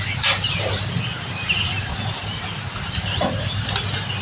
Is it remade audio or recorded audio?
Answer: recorded